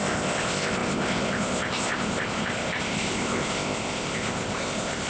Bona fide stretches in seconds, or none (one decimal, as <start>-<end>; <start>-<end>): none